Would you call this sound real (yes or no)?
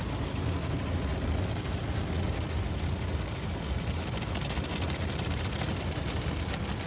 yes